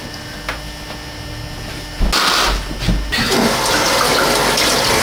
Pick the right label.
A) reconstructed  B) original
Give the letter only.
B